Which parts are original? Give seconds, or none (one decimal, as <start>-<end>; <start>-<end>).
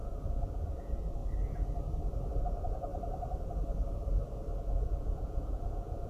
1.2-2.4; 2.9-4.6